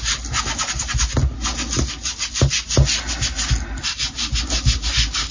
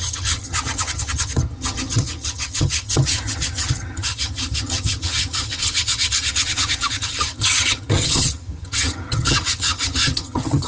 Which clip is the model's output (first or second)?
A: second